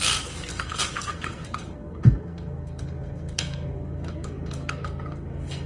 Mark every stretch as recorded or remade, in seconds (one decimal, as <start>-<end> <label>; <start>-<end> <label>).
0.0-5.7 remade